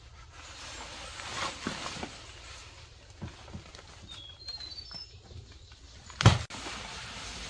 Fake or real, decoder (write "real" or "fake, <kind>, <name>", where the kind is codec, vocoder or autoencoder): real